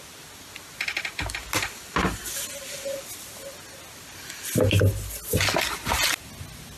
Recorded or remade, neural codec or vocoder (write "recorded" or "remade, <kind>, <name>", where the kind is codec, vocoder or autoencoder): recorded